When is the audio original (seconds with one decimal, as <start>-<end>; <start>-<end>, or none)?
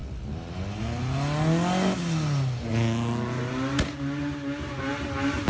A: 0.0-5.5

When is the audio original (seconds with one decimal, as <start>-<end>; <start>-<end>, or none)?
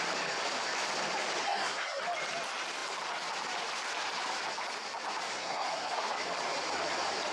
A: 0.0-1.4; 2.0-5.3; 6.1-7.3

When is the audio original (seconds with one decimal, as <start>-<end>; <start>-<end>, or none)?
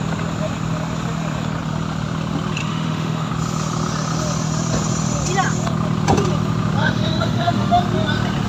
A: 0.0-2.6; 3.3-6.8; 7.8-8.5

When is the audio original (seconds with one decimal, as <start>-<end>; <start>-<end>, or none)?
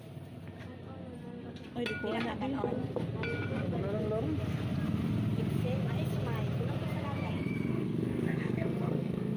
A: 0.0-7.7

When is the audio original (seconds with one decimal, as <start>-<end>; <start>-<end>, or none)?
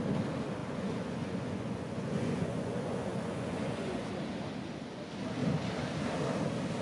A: 0.0-0.6; 4.1-6.8